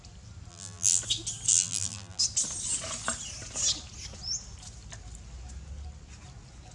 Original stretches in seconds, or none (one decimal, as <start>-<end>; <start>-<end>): 0.0-0.5; 1.0-1.5; 2.2-6.7